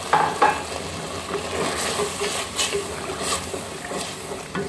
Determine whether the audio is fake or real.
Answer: real